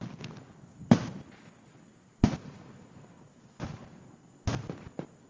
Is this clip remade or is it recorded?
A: recorded